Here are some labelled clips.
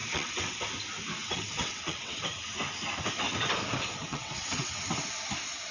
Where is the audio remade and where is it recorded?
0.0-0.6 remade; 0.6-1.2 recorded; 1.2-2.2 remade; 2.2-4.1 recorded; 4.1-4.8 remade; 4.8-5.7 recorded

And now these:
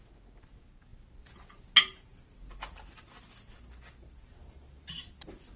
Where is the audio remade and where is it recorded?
0.0-5.6 recorded

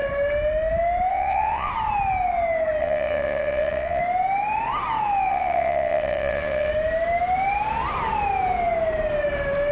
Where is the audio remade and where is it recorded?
0.0-1.1 recorded; 1.1-1.7 remade; 1.7-2.8 recorded; 2.8-4.0 remade; 4.0-5.3 recorded; 5.3-6.7 remade; 6.7-9.7 recorded

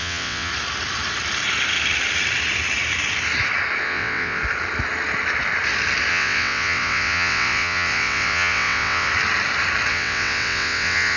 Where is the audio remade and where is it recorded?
0.0-0.5 remade; 0.5-3.8 recorded; 3.8-4.4 remade; 4.4-6.1 recorded; 6.1-9.1 remade; 9.1-9.9 recorded; 9.9-11.2 remade

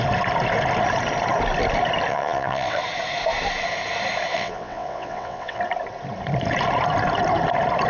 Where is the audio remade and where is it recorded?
0.0-2.1 recorded; 2.1-2.8 remade; 2.8-4.3 recorded; 4.3-5.6 remade; 5.6-7.9 recorded

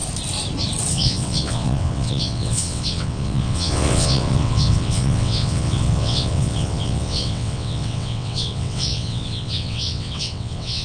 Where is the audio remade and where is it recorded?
0.0-0.9 recorded; 0.9-10.8 remade